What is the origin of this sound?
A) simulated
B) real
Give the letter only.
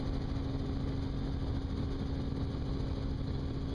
B